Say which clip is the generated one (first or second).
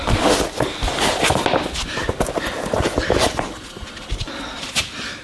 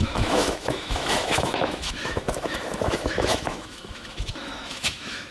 second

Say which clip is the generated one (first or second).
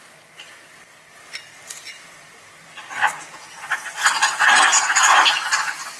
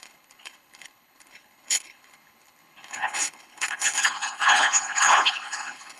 second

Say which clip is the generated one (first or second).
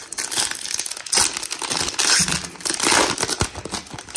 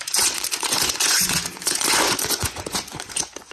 second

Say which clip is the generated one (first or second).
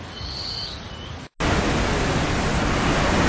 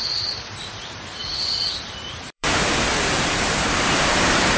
second